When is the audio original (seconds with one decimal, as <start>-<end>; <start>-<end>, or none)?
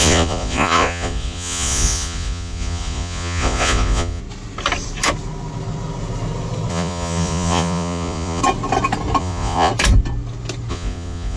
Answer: 4.2-6.7; 8.4-9.2; 9.7-10.7